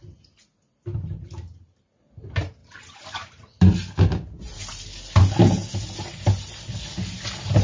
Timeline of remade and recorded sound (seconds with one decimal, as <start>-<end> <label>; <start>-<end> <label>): 0.0-7.6 recorded